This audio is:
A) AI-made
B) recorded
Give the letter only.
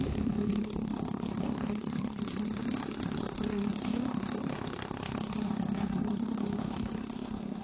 A